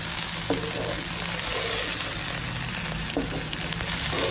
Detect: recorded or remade recorded